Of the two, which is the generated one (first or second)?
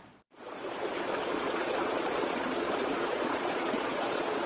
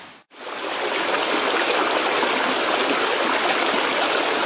first